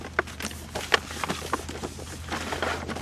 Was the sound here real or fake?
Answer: real